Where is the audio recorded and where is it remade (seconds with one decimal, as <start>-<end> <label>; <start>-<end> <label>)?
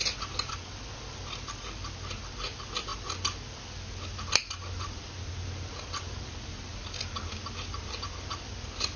0.0-9.0 recorded